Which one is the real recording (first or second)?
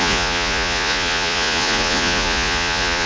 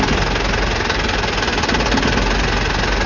second